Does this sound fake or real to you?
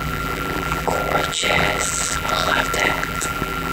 fake